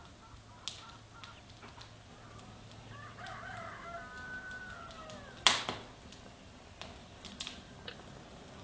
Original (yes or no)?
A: yes